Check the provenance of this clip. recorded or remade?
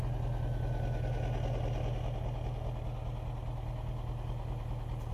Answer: recorded